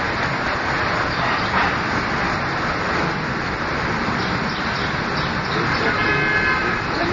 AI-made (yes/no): no